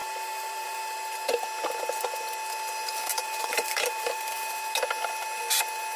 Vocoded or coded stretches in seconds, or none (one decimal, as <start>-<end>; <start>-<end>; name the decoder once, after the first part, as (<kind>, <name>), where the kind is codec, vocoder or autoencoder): 0.0-0.8 (vocoder, BigVGAN v2); 3.1-4.5